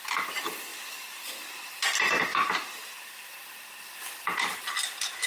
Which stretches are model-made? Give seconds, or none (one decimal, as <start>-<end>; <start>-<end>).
none